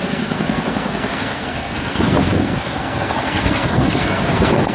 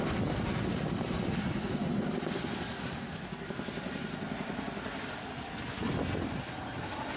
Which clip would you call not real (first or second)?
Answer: first